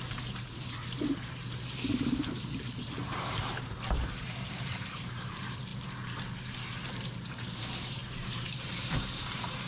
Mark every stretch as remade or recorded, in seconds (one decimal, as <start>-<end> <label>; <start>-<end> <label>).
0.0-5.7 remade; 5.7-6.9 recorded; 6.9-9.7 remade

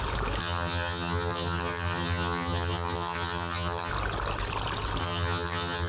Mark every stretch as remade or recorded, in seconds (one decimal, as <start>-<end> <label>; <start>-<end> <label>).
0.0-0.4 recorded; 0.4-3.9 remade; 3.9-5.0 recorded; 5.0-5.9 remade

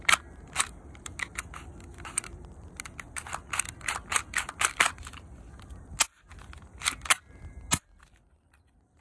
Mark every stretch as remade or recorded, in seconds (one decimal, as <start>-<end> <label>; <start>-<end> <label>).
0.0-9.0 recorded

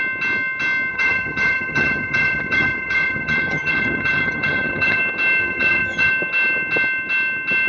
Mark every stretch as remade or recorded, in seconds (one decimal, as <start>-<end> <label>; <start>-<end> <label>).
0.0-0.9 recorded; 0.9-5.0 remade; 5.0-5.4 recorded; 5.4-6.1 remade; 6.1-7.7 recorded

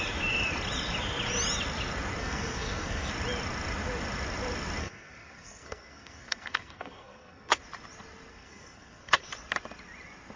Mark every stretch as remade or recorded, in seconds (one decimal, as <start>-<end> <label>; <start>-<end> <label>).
0.0-2.2 recorded; 2.2-3.1 remade; 3.1-4.8 recorded; 4.8-7.6 remade; 7.6-8.3 recorded; 8.3-9.3 remade; 9.3-10.4 recorded